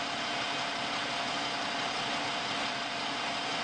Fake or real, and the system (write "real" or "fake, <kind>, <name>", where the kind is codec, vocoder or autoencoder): real